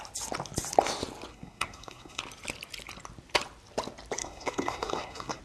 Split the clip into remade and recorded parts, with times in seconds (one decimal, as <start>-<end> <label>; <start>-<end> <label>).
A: 0.0-1.3 recorded; 1.3-2.2 remade; 2.2-4.2 recorded; 4.2-5.4 remade